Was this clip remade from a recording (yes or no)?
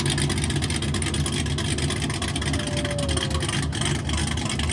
no